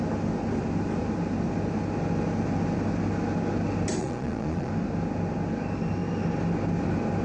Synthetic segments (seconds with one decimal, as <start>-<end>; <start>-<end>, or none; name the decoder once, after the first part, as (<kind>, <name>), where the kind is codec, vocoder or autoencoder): 4.0-4.7 (vocoder, Vocos)